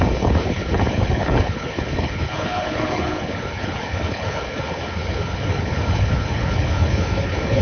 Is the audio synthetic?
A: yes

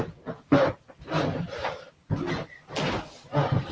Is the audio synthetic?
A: no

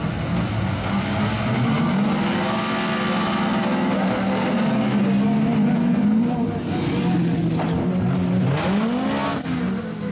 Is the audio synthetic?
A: no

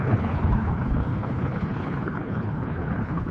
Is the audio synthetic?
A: yes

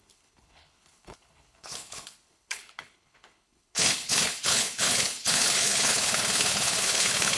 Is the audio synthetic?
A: yes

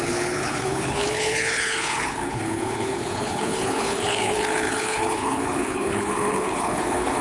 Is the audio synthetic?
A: yes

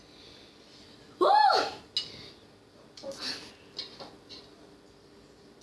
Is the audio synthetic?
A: no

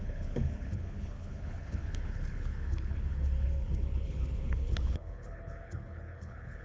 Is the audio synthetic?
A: yes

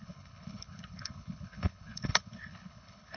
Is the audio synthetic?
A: yes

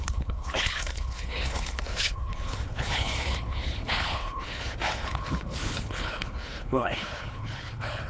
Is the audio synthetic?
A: yes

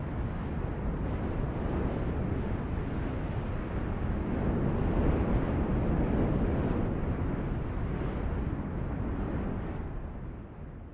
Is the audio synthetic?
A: no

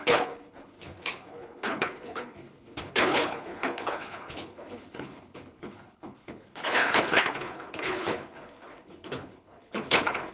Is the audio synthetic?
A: yes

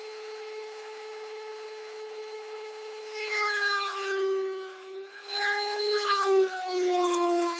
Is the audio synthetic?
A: yes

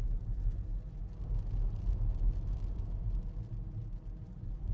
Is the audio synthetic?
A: no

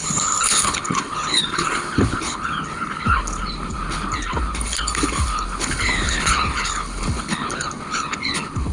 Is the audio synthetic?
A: yes